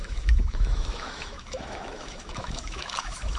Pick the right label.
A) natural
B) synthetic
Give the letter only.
B